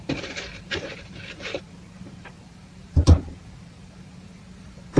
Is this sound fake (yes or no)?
yes